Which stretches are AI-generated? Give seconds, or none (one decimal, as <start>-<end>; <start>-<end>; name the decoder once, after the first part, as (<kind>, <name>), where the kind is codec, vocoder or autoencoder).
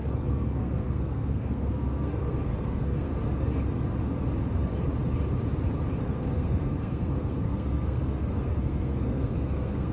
0.0-3.1 (codec, SNAC); 6.0-9.9